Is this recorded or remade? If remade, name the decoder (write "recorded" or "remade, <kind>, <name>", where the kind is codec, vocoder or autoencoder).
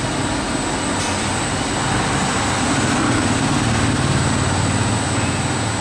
recorded